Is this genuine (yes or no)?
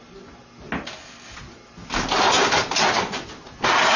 yes